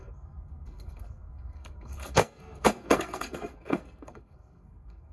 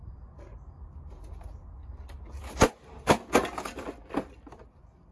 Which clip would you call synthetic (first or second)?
first